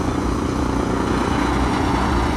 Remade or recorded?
remade